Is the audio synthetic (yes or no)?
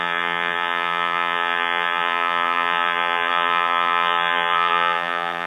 yes